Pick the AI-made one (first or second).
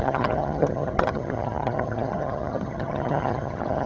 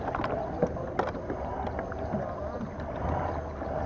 first